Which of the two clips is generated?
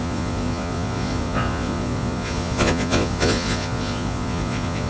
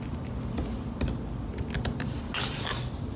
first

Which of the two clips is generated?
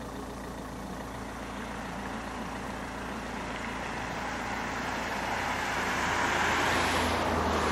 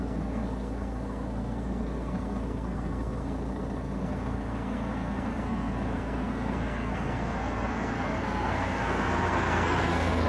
second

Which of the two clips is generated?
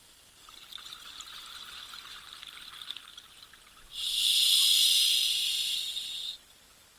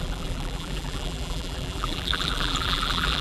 second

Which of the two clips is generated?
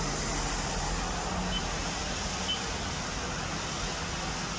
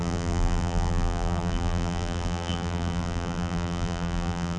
second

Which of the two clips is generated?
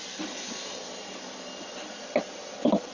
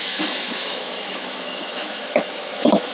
second